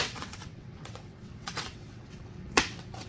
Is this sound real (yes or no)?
no